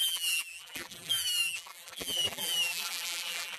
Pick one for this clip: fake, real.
fake